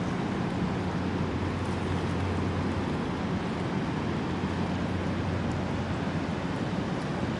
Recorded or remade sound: recorded